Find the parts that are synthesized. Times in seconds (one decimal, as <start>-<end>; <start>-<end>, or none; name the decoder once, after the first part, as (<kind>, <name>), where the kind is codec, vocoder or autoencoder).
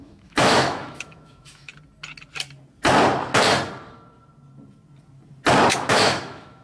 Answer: 0.0-1.7 (autoencoder, DAC-VAE); 5.7-6.6